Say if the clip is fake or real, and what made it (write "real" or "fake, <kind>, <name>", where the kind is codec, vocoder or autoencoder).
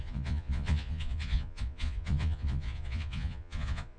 fake, vocoder, Vocos